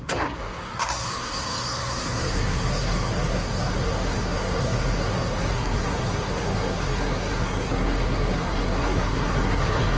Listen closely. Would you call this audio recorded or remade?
remade